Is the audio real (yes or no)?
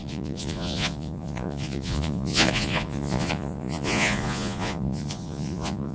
no